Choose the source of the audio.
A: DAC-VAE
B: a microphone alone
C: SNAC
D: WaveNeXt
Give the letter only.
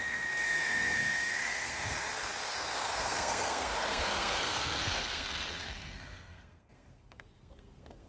C